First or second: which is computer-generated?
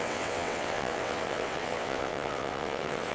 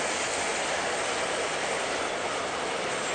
first